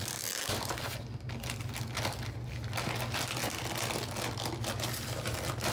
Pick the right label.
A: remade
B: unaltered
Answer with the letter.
B